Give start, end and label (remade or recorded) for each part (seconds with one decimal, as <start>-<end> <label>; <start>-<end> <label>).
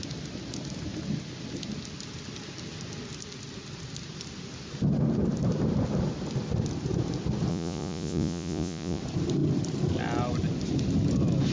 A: 0.0-7.5 recorded; 7.5-9.0 remade; 9.0-11.5 recorded